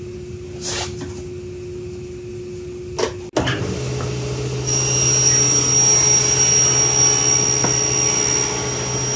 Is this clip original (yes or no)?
yes